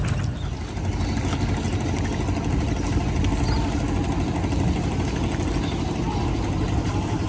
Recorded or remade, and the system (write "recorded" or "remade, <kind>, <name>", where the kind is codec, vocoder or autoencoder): recorded